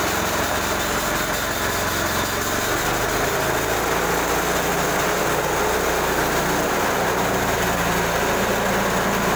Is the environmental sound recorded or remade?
recorded